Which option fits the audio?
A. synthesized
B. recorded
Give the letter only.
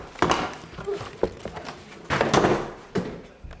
B